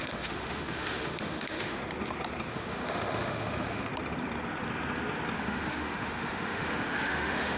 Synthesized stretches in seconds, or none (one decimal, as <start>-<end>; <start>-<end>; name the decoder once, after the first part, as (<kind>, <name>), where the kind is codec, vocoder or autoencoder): 0.0-1.8 (autoencoder, DAC-VAE); 2.5-3.9; 5.4-7.6

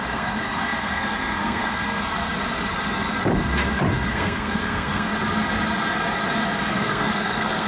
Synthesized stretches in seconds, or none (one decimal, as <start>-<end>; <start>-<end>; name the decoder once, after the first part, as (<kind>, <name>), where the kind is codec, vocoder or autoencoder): 0.0-2.1 (codec, SNAC); 4.1-5.1; 6.7-7.7

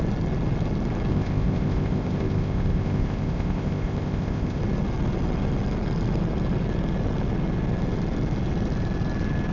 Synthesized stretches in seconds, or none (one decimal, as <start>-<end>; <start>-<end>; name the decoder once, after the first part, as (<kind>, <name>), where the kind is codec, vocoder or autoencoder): 1.1-4.6 (codec, ZipCodec)

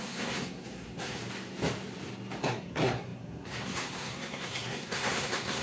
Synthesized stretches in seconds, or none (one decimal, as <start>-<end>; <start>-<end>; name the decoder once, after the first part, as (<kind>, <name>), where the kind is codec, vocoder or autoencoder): 0.0-1.2 (codec, SNAC); 2.4-5.6